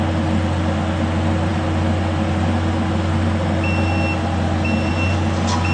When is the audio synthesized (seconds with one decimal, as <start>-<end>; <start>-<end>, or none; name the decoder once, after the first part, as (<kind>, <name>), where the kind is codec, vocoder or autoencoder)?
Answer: none